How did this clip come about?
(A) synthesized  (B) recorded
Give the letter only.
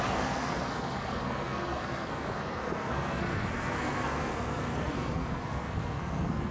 A